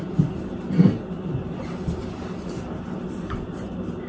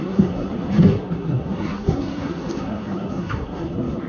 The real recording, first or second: first